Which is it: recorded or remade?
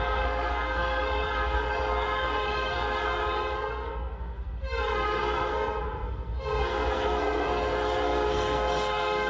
remade